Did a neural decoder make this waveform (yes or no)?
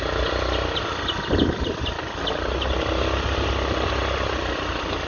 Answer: no